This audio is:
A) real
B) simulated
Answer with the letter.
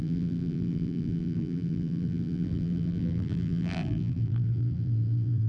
B